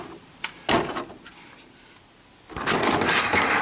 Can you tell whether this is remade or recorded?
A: recorded